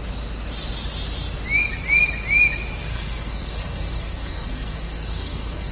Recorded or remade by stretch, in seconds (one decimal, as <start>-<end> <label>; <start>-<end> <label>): 0.0-2.9 recorded; 2.9-5.7 remade

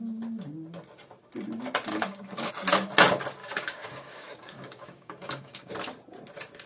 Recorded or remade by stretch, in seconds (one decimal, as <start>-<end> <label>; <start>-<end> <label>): 0.0-1.9 recorded; 1.9-2.5 remade; 2.5-3.4 recorded; 3.4-5.7 remade; 5.7-6.7 recorded

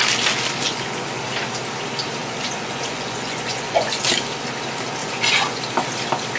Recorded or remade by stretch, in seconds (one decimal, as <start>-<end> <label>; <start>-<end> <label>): 0.0-0.6 recorded; 0.6-1.2 remade; 1.2-2.2 recorded; 2.2-3.9 remade; 3.9-5.0 recorded; 5.0-5.6 remade; 5.6-6.4 recorded

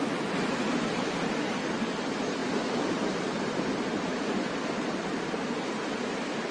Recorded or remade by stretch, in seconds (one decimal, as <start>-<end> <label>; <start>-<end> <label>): 0.0-6.5 recorded